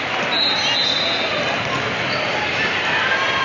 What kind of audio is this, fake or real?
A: real